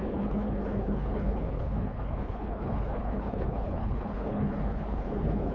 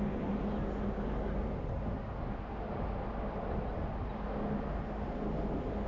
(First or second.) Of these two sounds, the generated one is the first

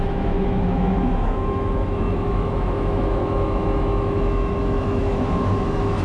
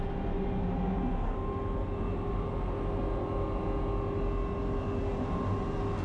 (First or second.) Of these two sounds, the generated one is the first